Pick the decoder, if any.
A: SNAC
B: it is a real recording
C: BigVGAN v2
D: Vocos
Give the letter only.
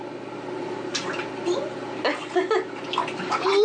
B